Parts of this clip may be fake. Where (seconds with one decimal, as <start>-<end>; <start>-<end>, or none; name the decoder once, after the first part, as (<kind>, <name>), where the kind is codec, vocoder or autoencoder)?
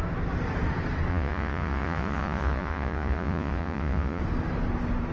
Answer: 1.1-4.2 (vocoder, Vocos)